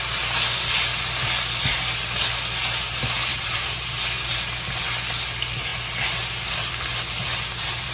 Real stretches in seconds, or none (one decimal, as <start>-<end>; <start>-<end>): 0.0-3.3; 4.0-7.9